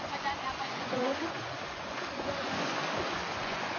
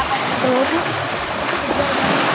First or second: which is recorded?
second